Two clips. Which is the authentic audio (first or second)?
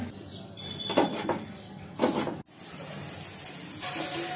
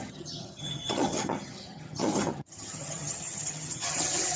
first